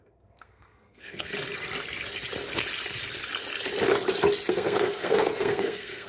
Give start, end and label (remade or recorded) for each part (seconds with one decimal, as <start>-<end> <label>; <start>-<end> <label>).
0.0-1.3 remade; 1.3-4.5 recorded; 4.5-6.1 remade